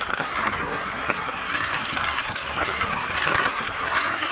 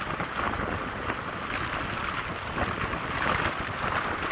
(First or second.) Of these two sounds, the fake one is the first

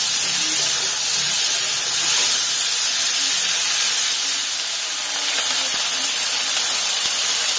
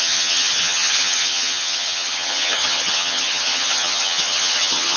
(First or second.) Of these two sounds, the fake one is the second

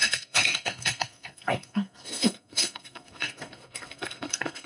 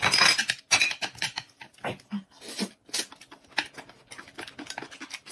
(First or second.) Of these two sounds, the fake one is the first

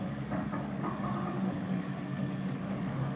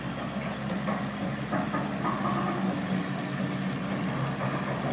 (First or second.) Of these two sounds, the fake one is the first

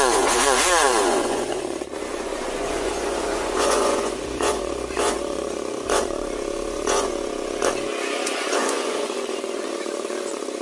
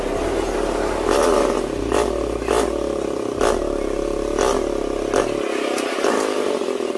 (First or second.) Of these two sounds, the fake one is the first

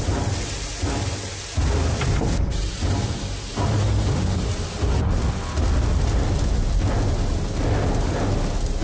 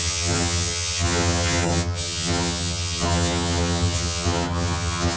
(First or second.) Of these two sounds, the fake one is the second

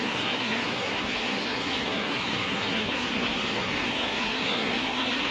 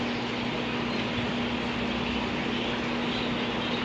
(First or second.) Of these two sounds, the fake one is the first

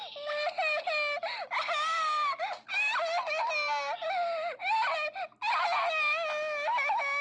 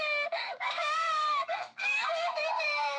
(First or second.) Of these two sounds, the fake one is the second